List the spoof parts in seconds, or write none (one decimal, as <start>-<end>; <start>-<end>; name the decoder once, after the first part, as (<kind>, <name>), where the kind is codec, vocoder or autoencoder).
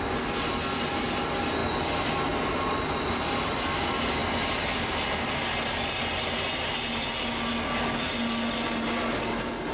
none